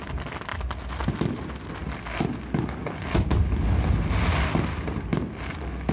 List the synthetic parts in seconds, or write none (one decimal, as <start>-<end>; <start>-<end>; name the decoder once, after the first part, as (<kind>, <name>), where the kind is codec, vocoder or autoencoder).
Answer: none